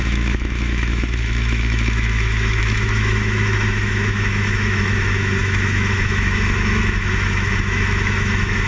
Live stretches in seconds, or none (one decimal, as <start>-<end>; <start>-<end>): none